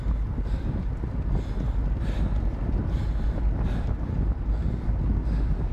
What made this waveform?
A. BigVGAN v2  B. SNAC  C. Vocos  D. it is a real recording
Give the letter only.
D